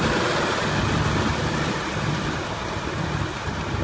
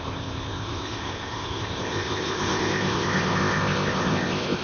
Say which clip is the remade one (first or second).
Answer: second